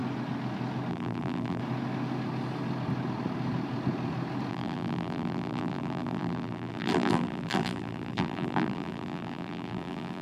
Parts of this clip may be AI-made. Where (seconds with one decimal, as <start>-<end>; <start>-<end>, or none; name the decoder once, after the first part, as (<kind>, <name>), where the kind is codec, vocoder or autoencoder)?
0.9-1.6 (vocoder, BigVGAN v2); 4.5-10.2